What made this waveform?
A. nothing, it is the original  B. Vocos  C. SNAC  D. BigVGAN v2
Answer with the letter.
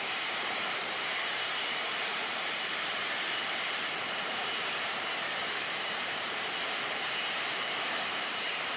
D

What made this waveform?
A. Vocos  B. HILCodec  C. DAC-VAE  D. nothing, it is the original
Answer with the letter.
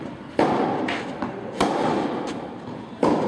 D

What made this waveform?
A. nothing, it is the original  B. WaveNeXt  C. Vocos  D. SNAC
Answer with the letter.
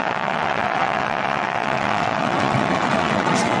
B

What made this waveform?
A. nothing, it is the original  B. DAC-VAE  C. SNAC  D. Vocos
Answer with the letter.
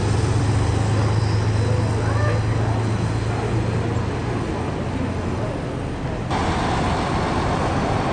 A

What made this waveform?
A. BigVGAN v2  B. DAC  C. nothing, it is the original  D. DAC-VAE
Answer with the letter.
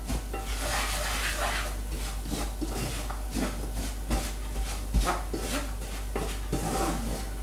C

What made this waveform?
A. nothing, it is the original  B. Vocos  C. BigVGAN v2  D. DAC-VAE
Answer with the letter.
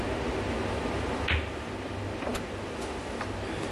A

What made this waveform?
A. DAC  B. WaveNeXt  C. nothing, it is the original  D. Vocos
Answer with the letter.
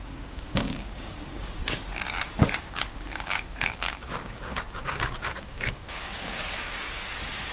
A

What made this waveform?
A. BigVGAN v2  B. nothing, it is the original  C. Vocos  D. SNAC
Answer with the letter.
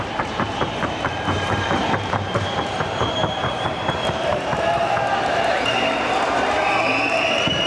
A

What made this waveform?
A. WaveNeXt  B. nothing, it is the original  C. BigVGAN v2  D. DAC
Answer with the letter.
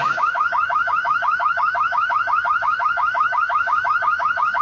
D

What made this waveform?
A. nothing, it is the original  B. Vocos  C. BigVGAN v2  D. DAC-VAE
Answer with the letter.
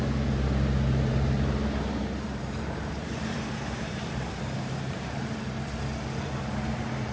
C